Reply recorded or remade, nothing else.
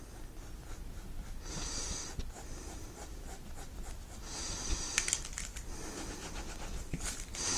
recorded